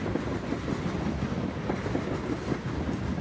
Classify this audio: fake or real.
real